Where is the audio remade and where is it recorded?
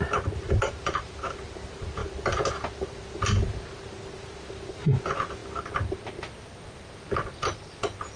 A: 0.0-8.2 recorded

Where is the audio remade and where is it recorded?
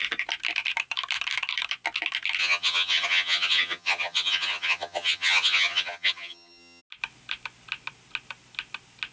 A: 0.0-2.4 recorded; 2.4-6.8 remade; 6.8-9.1 recorded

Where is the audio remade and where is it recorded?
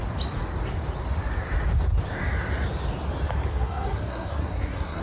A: 0.0-3.5 recorded; 3.5-5.0 remade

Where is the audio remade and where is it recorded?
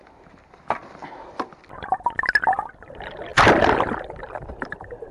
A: 0.0-1.0 remade; 1.0-2.5 recorded; 2.5-3.3 remade; 3.3-4.2 recorded; 4.2-5.1 remade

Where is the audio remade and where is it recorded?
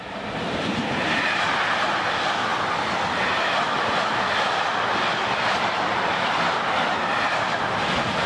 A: 0.0-8.3 recorded